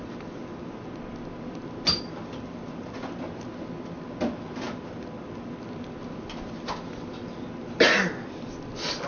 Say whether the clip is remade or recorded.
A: recorded